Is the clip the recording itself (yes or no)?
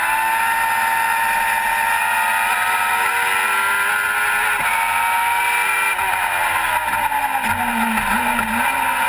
yes